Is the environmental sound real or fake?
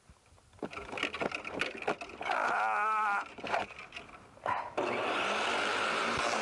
real